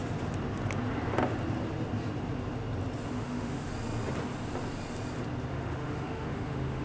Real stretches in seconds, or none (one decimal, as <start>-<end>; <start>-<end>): 0.0-3.1; 3.7-5.5